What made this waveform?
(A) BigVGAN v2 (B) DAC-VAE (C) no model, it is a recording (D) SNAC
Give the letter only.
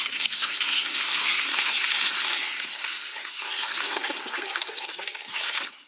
D